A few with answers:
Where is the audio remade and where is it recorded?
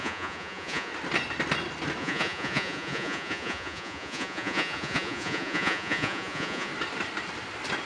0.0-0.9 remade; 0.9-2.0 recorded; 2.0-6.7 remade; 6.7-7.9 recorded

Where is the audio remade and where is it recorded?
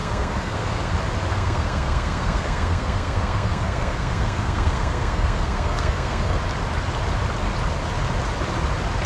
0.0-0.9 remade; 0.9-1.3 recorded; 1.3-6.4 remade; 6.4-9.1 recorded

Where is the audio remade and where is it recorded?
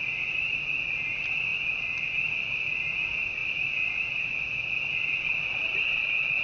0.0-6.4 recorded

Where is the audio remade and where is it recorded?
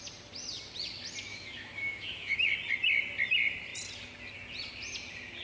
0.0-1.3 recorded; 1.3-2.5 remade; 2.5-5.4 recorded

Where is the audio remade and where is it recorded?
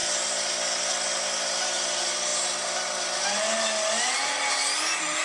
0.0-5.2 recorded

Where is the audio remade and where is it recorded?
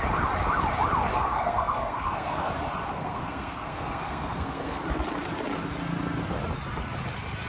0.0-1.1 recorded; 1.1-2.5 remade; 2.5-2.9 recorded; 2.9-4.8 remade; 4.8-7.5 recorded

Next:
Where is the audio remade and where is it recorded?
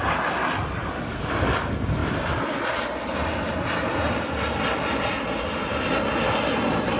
0.0-7.0 recorded